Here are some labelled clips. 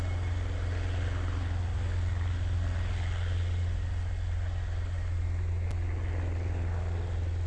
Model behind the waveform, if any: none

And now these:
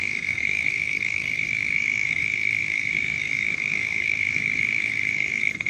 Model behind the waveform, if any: codec, SNAC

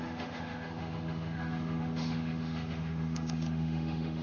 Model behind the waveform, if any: autoencoder, DAC-VAE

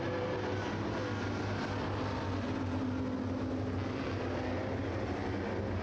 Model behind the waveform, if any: none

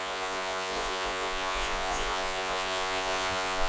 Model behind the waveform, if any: vocoder, Vocos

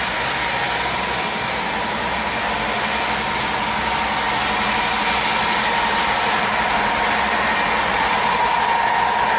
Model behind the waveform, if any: none